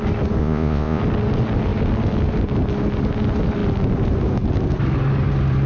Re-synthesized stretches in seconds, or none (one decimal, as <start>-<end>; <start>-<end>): 0.4-1.0